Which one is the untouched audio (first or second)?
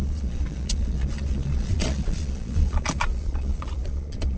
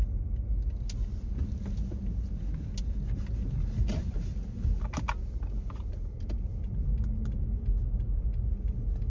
second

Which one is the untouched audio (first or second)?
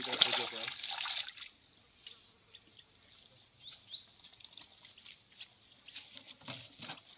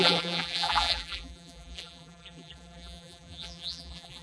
first